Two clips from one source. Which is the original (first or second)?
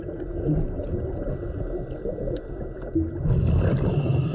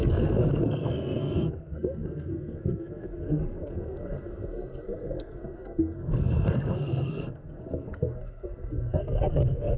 first